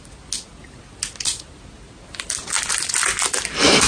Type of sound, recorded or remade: recorded